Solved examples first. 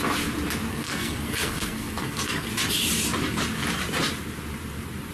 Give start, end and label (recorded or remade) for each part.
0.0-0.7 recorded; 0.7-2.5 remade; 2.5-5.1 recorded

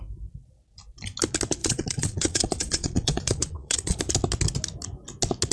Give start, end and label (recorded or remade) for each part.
0.0-1.6 recorded; 1.6-4.0 remade; 4.0-5.5 recorded

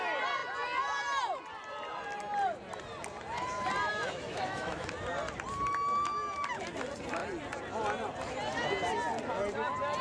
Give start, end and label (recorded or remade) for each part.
0.0-3.9 recorded; 3.9-4.9 remade; 4.9-10.0 recorded

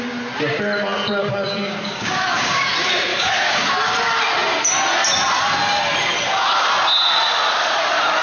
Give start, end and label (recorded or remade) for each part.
0.0-1.2 recorded; 1.2-2.7 remade; 2.7-3.1 recorded; 3.1-3.7 remade; 3.7-8.2 recorded

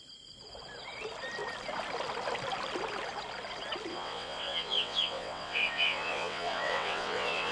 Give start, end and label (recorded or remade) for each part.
0.0-3.9 recorded; 3.9-7.5 remade